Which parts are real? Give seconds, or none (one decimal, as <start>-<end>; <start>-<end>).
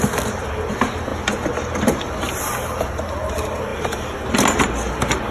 0.0-5.3